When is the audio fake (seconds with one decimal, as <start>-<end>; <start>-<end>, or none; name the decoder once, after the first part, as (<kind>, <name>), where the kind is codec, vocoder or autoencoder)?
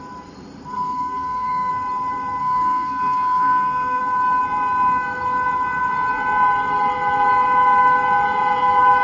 0.7-1.7 (codec, SNAC); 2.4-4.0